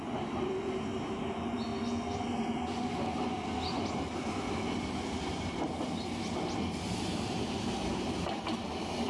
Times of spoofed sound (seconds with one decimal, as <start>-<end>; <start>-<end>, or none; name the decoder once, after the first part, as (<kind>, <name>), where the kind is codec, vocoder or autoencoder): 0.0-1.7 (vocoder, BigVGAN v2); 7.0-9.1

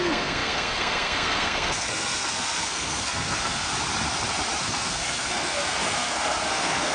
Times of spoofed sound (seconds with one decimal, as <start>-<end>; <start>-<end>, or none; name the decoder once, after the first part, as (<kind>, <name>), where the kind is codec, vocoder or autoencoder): 0.0-3.7 (codec, SNAC); 4.6-6.9